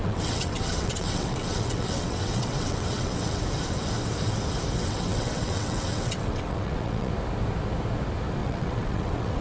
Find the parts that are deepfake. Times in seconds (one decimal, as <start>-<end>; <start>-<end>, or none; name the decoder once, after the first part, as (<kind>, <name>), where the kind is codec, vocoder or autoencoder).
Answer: 0.0-3.4 (vocoder, WaveNeXt); 4.8-7.1; 8.4-9.4